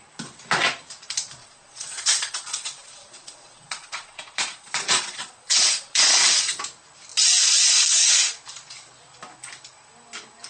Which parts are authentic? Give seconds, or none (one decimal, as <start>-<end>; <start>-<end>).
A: 0.0-1.4; 6.6-10.5

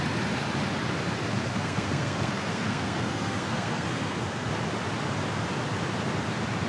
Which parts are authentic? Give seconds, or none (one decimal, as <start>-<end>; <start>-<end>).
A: 0.0-1.5; 4.5-6.7

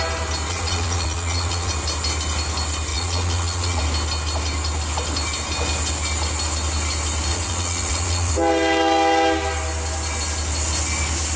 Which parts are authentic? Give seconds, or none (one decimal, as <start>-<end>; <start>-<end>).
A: 0.0-0.5; 1.7-2.9; 3.8-7.3; 8.3-11.4

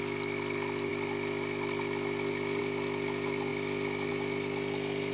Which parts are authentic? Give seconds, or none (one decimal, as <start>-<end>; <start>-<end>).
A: 0.0-5.1

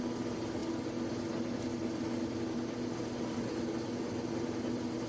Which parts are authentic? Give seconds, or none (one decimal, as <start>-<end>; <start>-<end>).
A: 0.0-5.1